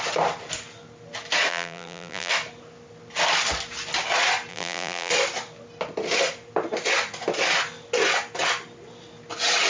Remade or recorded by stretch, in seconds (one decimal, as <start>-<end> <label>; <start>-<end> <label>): 0.0-1.5 recorded; 1.5-2.3 remade; 2.3-4.5 recorded; 4.5-5.1 remade; 5.1-9.7 recorded